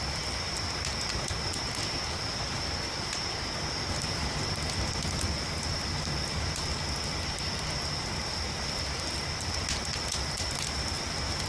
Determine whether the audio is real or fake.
real